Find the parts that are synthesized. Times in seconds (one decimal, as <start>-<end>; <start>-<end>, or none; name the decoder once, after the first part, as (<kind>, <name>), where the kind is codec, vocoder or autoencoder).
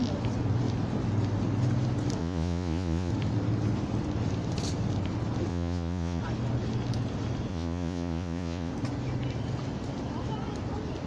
2.2-3.1 (vocoder, Vocos); 5.5-6.2; 7.5-8.7